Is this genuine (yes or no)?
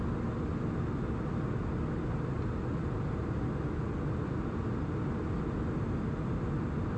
yes